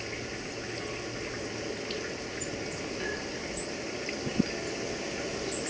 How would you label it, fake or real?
real